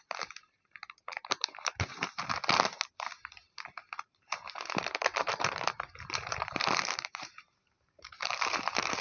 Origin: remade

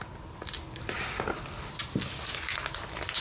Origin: recorded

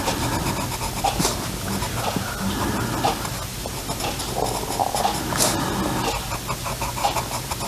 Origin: recorded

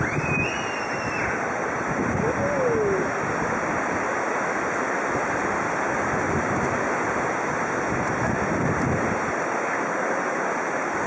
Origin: recorded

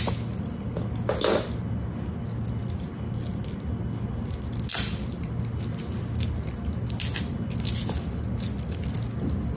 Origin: recorded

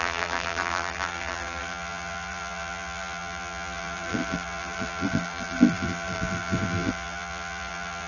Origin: remade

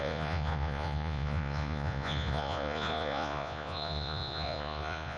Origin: remade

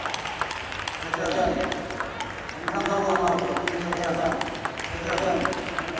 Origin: recorded